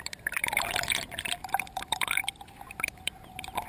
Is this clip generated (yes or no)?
yes